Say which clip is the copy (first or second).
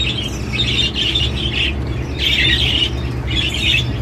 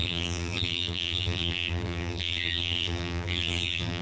second